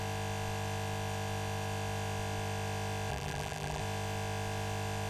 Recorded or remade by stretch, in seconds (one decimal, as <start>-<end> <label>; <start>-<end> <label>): 0.0-3.1 recorded; 3.1-3.8 remade; 3.8-5.1 recorded